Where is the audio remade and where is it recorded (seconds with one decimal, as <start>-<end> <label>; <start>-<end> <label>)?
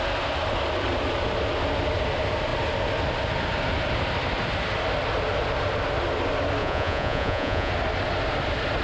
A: 0.0-6.6 recorded; 6.6-7.7 remade; 7.7-8.8 recorded